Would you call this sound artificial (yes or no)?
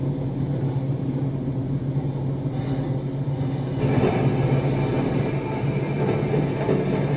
no